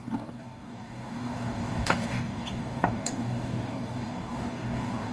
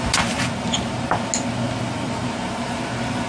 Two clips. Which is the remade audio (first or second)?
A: first